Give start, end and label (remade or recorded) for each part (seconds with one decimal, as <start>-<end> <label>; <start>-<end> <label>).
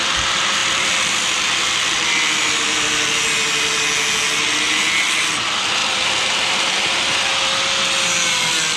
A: 0.0-0.6 recorded; 0.6-3.3 remade; 3.3-5.8 recorded; 5.8-7.6 remade; 7.6-8.8 recorded